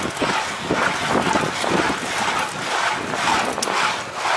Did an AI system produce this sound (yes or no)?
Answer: no